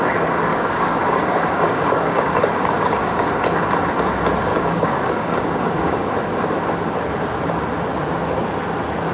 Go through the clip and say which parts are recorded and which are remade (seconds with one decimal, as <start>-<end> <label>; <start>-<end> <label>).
0.0-0.5 recorded; 0.5-3.2 remade; 3.2-4.5 recorded; 4.5-6.1 remade; 6.1-9.1 recorded